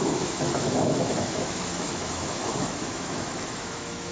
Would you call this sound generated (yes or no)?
yes